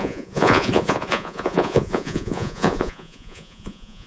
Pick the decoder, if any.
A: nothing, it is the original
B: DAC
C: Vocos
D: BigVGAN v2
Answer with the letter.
C